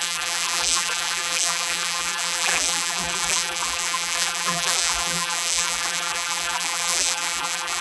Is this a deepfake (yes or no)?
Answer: yes